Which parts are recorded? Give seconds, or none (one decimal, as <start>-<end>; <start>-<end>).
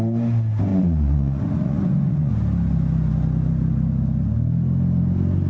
0.0-0.7; 2.3-5.5